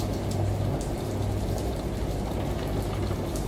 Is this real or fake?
real